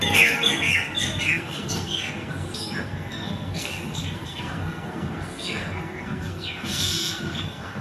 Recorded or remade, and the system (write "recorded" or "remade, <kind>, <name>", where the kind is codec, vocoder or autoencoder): remade, codec, SNAC